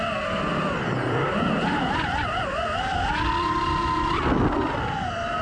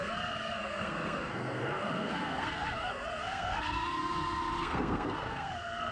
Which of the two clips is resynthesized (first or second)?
second